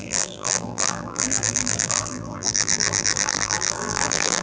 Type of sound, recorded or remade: remade